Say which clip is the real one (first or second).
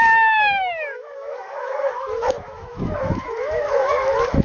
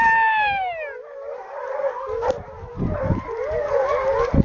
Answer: second